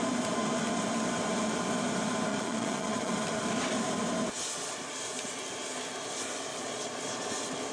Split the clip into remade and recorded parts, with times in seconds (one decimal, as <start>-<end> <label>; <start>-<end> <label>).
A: 0.0-2.3 recorded; 2.3-3.1 remade; 3.1-6.5 recorded; 6.5-7.3 remade; 7.3-7.7 recorded